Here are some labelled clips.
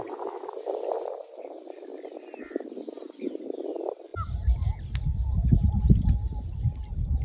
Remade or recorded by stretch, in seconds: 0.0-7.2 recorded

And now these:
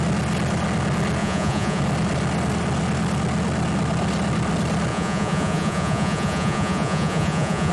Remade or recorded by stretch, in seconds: 0.0-1.2 recorded; 1.2-1.8 remade; 1.8-4.9 recorded; 4.9-7.7 remade

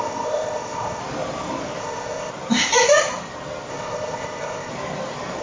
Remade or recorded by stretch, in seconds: 0.0-1.0 remade; 1.0-1.8 recorded; 1.8-2.3 remade; 2.3-3.7 recorded; 3.7-4.7 remade; 4.7-5.4 recorded

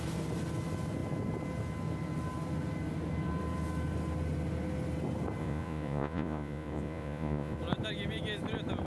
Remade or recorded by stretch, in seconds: 0.0-5.4 recorded; 5.4-7.6 remade; 7.6-8.9 recorded

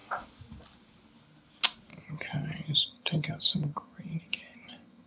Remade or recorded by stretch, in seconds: 0.0-1.9 recorded; 1.9-5.1 remade

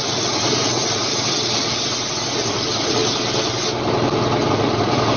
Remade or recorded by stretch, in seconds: 0.0-1.1 remade; 1.1-2.1 recorded; 2.1-3.0 remade; 3.0-4.5 recorded; 4.5-5.2 remade

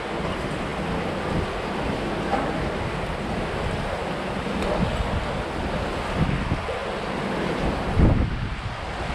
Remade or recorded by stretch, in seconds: 0.0-9.1 recorded

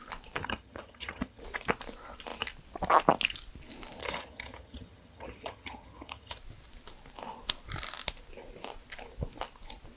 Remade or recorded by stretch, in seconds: 0.0-0.4 recorded; 0.4-1.4 remade; 1.4-4.0 recorded; 4.0-6.4 remade; 6.4-10.0 recorded